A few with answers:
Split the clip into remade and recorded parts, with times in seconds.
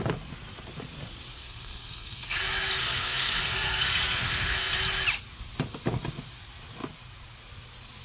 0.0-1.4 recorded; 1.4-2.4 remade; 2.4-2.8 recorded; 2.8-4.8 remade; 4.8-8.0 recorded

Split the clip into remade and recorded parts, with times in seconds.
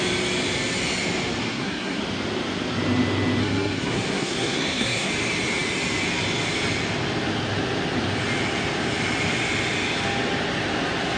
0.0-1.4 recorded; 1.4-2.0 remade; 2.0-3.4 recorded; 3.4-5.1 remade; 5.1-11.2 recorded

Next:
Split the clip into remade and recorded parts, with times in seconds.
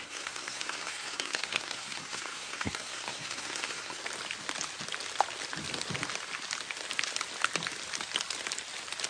0.0-4.0 remade; 4.0-9.1 recorded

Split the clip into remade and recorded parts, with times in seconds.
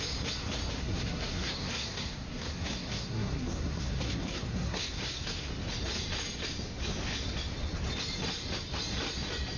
0.0-0.8 recorded; 0.8-5.5 remade; 5.5-9.6 recorded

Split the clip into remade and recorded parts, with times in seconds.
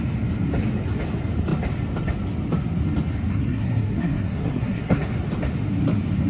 0.0-3.3 recorded; 3.3-5.1 remade; 5.1-6.3 recorded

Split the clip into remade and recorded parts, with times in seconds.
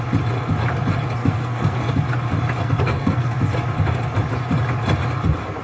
0.0-1.2 recorded; 1.2-1.9 remade; 1.9-2.6 recorded; 2.6-3.4 remade; 3.4-5.6 recorded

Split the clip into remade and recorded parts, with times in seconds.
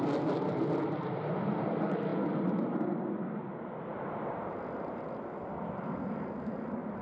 0.0-7.0 recorded